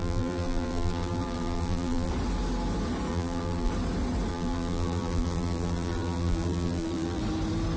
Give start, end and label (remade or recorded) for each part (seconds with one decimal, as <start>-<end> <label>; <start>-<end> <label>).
0.0-2.1 remade; 2.1-3.1 recorded; 3.1-3.7 remade; 3.7-4.3 recorded; 4.3-7.2 remade; 7.2-7.8 recorded